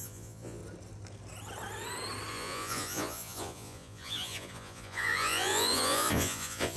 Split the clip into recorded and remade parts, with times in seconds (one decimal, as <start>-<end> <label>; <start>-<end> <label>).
0.0-0.6 remade; 0.6-2.3 recorded; 2.3-6.8 remade